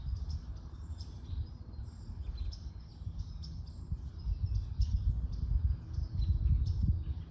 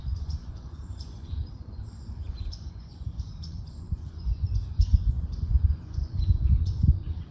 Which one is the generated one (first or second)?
second